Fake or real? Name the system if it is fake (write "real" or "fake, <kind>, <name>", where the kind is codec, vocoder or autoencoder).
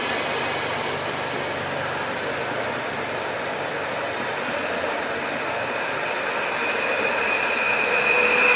real